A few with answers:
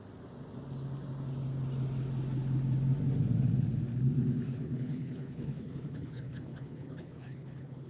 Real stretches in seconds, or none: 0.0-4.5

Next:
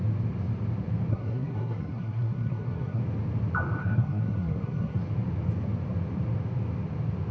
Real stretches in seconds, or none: 0.0-1.1; 3.0-3.8; 5.0-7.3

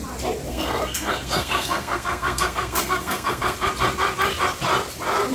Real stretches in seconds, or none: 0.0-0.5; 3.7-5.3

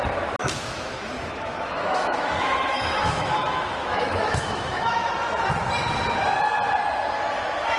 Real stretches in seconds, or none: 0.0-0.4; 5.1-7.8

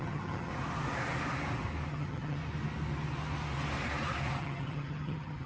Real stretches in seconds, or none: 0.5-1.9; 2.4-4.4

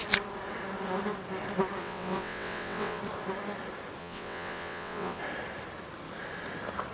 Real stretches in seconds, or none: 0.0-1.8; 3.0-4.0; 5.2-6.9

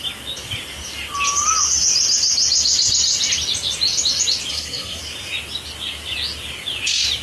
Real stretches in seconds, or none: 0.0-4.5; 5.0-7.2

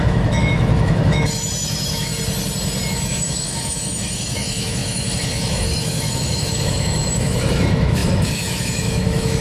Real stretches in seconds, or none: 2.1-2.9